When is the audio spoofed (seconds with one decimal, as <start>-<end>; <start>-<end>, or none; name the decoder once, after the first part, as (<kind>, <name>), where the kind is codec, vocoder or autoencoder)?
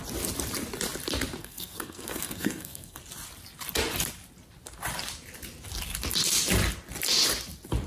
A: 1.4-3.0 (codec, SNAC)